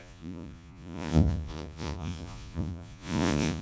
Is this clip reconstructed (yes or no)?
yes